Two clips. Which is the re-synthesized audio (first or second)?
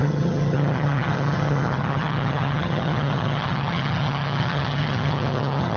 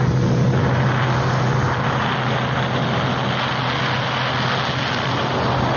first